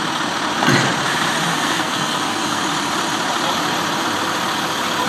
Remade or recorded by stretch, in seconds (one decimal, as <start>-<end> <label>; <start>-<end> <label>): 0.0-1.5 recorded; 1.5-2.6 remade; 2.6-5.1 recorded